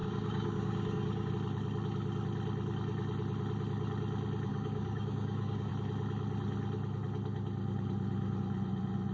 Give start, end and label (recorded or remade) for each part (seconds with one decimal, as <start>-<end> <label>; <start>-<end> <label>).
0.0-1.3 remade; 1.3-4.5 recorded; 4.5-5.7 remade; 5.7-9.1 recorded